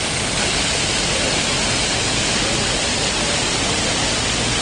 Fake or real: real